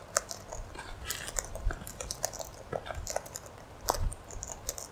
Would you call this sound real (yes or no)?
yes